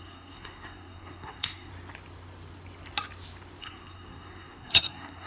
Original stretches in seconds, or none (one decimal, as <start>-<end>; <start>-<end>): 1.7-3.6